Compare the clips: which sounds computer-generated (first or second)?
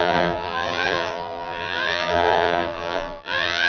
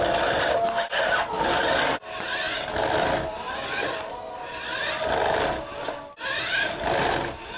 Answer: first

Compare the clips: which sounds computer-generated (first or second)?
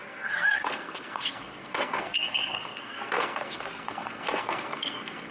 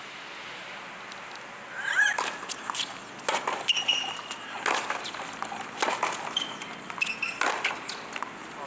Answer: first